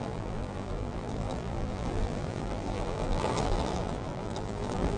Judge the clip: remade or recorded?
remade